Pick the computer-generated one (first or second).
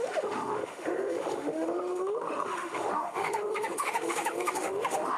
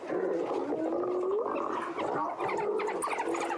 first